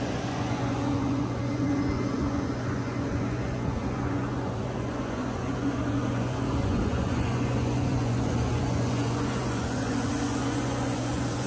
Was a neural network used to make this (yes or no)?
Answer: yes